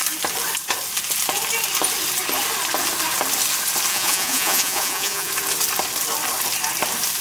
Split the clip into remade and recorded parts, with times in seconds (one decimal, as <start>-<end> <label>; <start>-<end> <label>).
0.0-3.9 recorded; 3.9-5.3 remade; 5.3-7.2 recorded

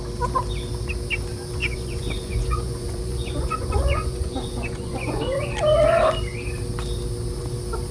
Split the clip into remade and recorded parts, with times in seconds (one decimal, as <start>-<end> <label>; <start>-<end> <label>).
0.0-1.6 recorded; 1.6-5.2 remade; 5.2-7.9 recorded